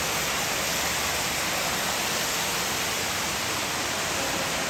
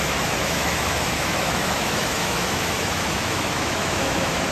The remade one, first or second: second